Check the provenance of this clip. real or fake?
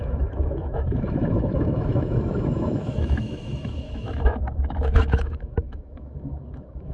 fake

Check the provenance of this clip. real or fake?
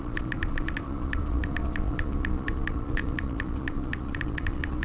fake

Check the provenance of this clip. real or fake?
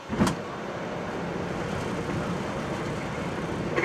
real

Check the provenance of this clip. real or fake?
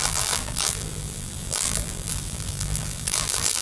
fake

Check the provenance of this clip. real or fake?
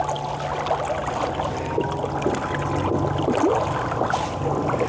real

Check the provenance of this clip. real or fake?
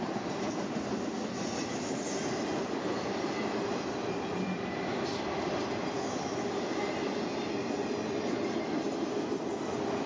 real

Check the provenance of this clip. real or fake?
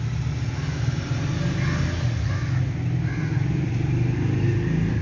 real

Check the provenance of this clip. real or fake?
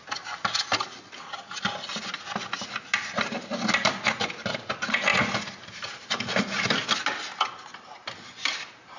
real